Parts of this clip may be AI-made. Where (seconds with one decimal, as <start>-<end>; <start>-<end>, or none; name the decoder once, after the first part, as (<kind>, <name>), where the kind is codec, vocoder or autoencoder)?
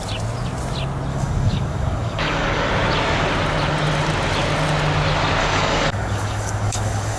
1.1-2.7 (codec, DAC); 5.4-7.2